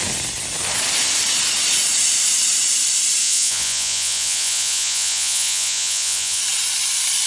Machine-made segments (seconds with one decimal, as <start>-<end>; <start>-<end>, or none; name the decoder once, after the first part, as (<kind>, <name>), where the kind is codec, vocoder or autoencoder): 3.2-6.4 (vocoder, Vocos)